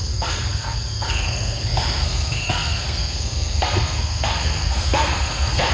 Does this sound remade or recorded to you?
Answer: remade